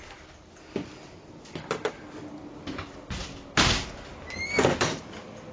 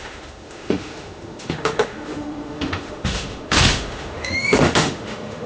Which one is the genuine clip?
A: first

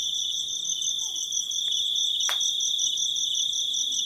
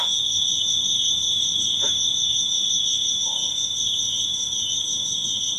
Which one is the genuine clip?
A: first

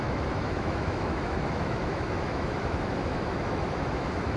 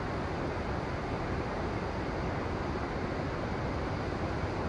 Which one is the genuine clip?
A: second